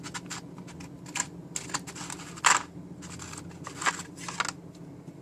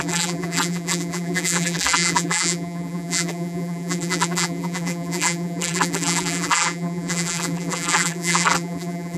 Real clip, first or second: first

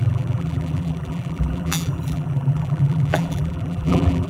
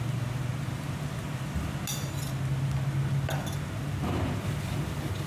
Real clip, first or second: second